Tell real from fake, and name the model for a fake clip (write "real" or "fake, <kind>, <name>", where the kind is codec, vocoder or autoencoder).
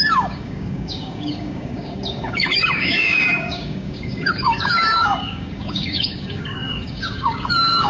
fake, codec, DAC